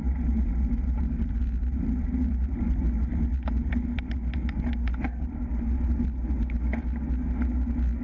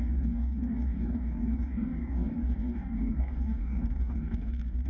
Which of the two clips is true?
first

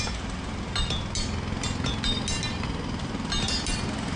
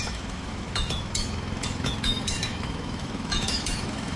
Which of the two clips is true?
first